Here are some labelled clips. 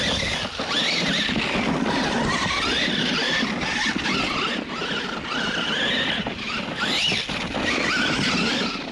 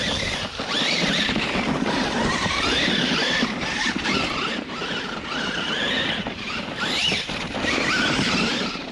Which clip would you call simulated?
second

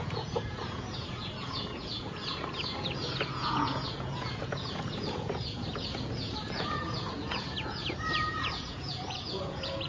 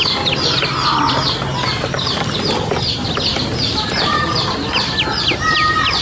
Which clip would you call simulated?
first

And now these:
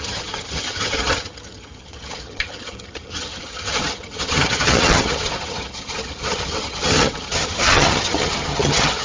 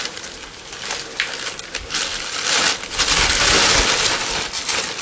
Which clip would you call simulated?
first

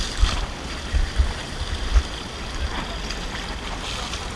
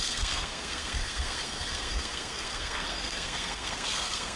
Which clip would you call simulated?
second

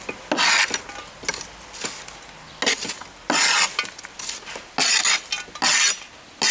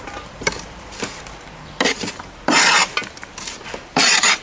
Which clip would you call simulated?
second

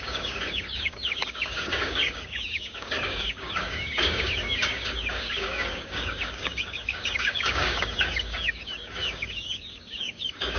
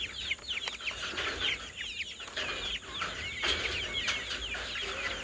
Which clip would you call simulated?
first